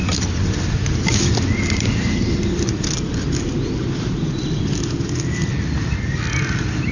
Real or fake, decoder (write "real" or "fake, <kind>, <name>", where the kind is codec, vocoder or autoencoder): real